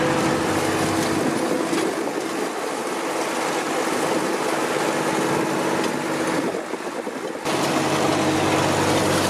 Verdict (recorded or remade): recorded